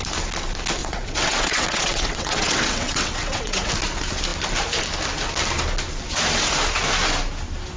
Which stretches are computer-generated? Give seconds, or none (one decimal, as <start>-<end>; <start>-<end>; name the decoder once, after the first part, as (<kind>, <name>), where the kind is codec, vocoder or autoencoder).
0.8-3.7 (vocoder, WaveNeXt)